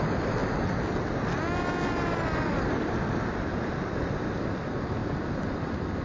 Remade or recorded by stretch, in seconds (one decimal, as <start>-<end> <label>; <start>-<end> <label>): 0.0-6.0 recorded